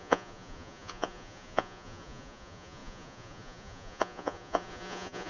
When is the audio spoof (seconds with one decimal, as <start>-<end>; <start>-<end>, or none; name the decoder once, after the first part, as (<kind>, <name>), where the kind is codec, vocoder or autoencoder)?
0.0-5.3 (vocoder, Vocos)